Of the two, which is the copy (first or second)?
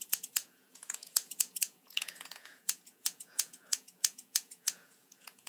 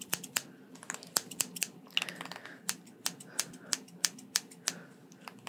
first